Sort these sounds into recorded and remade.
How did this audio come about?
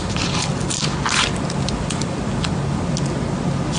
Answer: recorded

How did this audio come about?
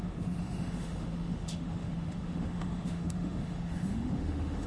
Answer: remade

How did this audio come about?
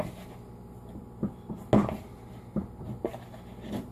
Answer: recorded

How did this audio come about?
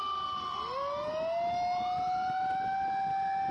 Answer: recorded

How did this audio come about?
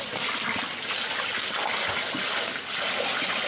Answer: recorded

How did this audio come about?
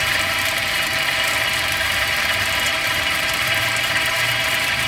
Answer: remade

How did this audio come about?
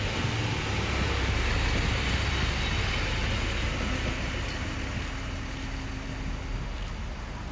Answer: recorded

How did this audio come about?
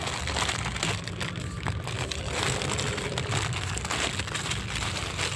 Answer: recorded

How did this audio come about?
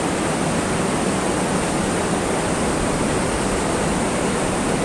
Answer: recorded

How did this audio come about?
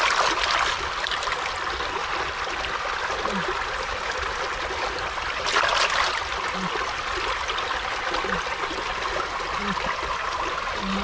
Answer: recorded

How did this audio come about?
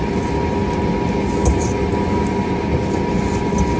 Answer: recorded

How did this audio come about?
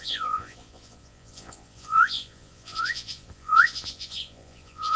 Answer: remade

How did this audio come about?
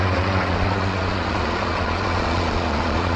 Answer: remade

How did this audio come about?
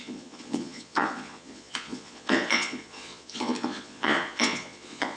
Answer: remade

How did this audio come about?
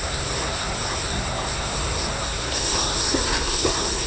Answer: remade